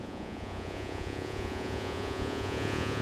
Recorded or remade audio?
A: remade